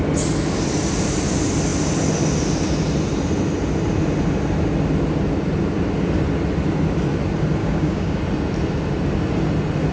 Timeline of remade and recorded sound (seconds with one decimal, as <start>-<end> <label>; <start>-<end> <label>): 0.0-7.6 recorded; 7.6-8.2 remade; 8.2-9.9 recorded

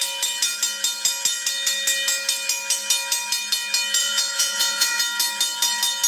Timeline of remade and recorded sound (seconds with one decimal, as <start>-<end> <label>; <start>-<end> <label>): 0.0-4.0 recorded; 4.0-5.0 remade; 5.0-6.1 recorded

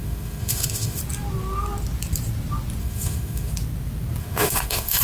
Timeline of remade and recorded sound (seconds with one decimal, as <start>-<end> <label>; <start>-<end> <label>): 0.0-1.0 remade; 1.0-2.8 recorded; 2.8-3.5 remade; 3.5-4.2 recorded; 4.2-5.0 remade